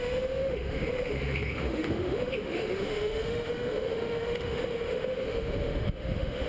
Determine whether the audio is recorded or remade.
remade